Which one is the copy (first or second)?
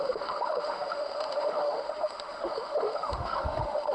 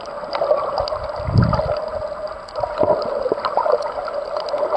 first